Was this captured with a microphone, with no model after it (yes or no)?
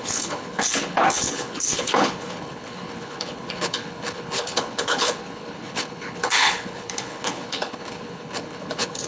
no